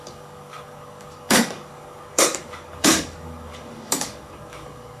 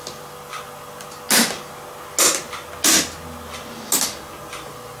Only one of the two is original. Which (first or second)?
second